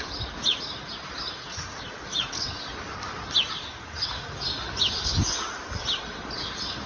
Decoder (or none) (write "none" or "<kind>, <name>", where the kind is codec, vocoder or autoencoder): none